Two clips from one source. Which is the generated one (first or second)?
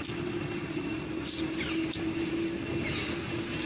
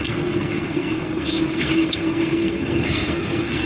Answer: second